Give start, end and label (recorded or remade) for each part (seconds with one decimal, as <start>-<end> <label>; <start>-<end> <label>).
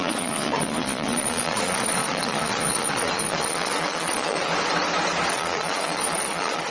0.0-4.5 remade; 4.5-5.3 recorded; 5.3-6.7 remade